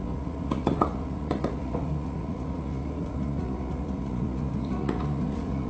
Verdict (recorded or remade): remade